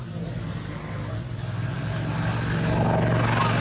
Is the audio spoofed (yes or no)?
no